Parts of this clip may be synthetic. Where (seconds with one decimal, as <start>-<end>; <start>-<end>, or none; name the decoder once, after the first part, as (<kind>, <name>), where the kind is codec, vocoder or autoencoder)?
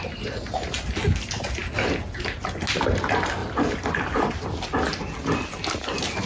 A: none